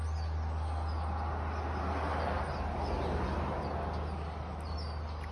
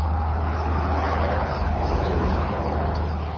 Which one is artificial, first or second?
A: second